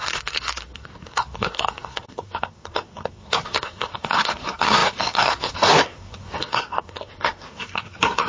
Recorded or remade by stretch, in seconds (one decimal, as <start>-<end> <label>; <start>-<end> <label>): 0.0-8.3 remade